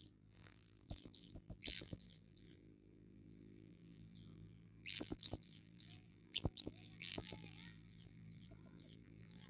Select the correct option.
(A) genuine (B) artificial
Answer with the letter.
B